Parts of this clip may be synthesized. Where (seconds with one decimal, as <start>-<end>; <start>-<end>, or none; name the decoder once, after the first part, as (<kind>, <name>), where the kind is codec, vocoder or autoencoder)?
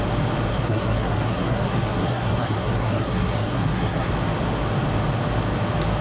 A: 0.5-4.1 (codec, SNAC)